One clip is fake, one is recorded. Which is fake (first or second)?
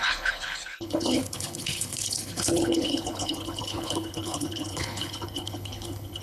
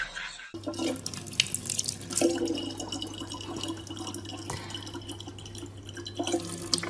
first